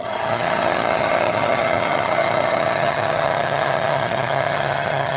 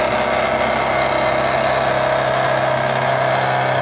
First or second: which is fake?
first